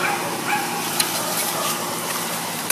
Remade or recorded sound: remade